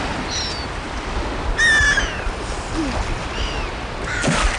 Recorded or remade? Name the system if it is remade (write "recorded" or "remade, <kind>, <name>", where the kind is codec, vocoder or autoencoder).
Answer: recorded